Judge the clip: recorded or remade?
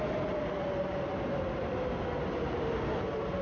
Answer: recorded